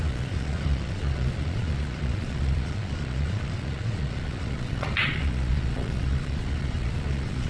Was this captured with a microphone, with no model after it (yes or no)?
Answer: no